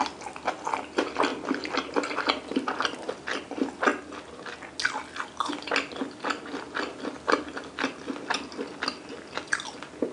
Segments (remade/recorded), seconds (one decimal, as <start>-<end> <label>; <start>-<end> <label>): 0.0-10.1 recorded